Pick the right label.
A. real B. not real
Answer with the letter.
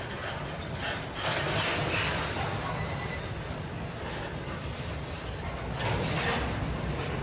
A